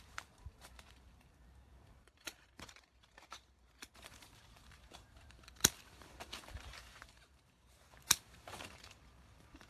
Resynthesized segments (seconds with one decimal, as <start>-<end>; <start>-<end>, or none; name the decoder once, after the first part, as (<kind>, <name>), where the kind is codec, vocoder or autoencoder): 0.0-9.7 (vocoder, BigVGAN v2)